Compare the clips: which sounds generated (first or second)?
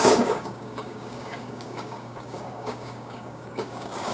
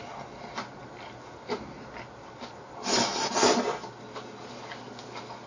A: first